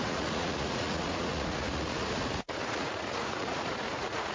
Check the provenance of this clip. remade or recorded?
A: remade